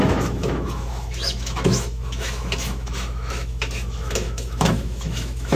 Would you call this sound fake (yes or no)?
yes